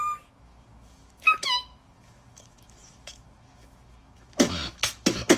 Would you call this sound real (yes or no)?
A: no